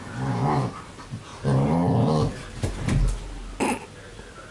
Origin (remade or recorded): recorded